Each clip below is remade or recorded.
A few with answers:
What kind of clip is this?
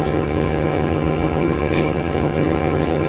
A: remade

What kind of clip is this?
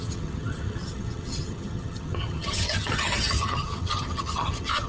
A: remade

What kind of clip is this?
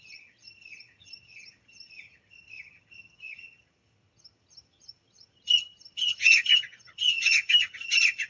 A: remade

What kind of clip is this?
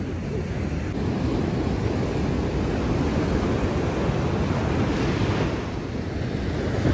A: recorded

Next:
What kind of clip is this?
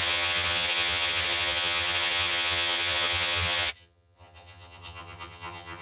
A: remade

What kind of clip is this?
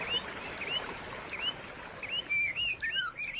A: recorded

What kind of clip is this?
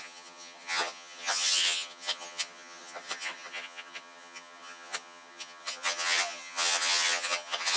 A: remade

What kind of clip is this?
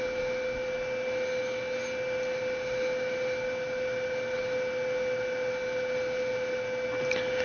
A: recorded